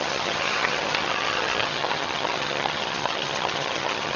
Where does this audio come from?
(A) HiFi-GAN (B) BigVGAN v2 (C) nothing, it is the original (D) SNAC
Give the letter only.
A